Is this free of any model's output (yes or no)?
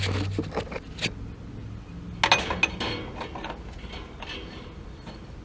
yes